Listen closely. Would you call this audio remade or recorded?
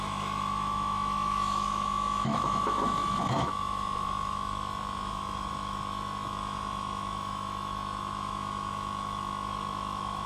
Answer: remade